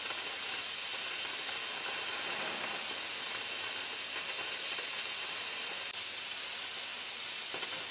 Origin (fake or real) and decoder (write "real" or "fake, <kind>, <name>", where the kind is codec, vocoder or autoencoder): real